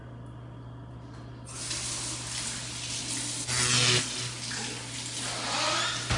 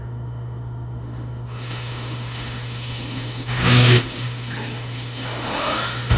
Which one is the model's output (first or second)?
second